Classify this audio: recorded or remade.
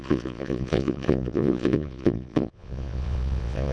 remade